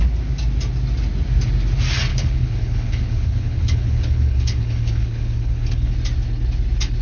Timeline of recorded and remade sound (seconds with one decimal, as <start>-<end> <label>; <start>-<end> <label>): 0.0-2.1 recorded; 2.1-5.9 remade; 5.9-7.0 recorded